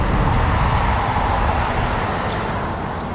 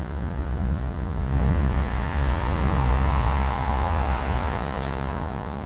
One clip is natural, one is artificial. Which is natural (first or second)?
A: first